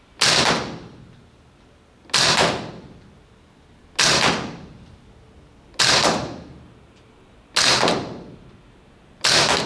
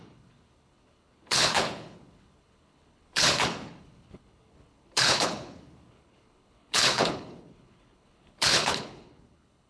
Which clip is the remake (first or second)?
second